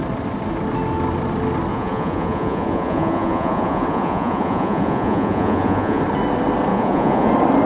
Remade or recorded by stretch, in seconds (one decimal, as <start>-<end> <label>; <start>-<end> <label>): 0.0-1.7 recorded; 1.7-6.0 remade; 6.0-6.7 recorded; 6.7-7.3 remade; 7.3-7.7 recorded